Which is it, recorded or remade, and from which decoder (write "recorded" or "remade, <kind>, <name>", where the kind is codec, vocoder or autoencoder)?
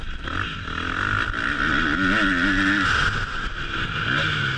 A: recorded